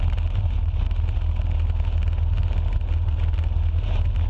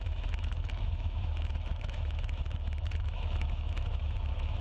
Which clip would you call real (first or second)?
first